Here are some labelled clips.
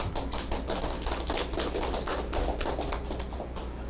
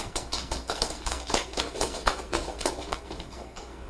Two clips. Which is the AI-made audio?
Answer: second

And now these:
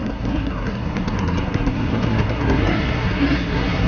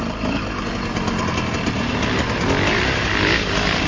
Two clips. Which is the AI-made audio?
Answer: first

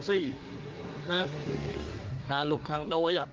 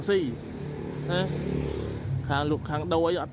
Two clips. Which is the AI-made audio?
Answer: first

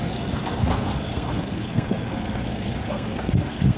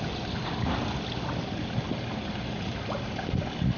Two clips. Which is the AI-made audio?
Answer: first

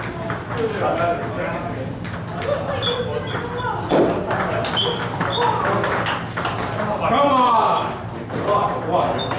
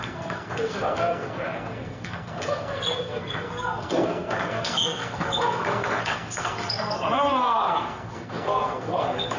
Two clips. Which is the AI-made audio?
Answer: second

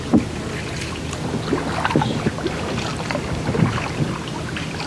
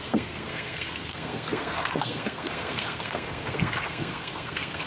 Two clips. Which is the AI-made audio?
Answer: second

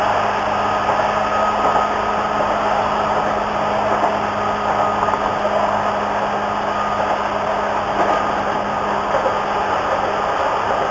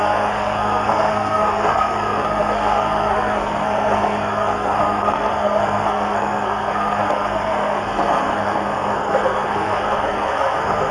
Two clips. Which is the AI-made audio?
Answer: second